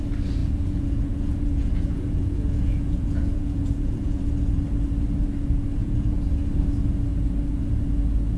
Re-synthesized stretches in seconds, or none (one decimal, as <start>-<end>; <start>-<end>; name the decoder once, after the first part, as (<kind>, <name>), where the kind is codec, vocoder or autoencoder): 0.4-4.2 (vocoder, Vocos); 5.8-6.3